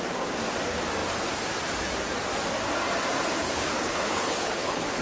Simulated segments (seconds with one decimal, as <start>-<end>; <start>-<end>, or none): 3.4-5.0